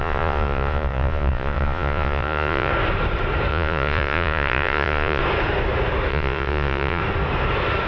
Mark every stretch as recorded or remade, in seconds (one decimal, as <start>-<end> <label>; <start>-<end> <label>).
0.0-2.7 remade; 2.7-3.5 recorded; 3.5-5.2 remade; 5.2-6.1 recorded; 6.1-7.0 remade; 7.0-7.9 recorded